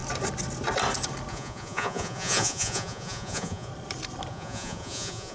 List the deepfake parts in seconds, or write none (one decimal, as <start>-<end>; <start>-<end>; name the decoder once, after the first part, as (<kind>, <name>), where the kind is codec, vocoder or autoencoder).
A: 1.3-3.7 (vocoder, Vocos); 4.3-5.3